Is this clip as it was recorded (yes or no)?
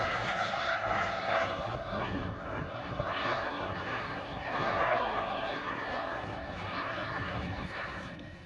no